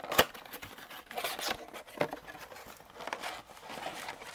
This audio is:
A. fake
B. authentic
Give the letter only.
B